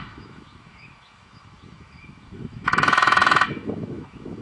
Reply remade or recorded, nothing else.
remade